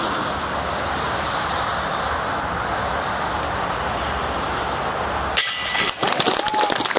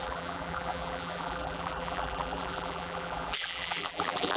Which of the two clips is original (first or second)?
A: first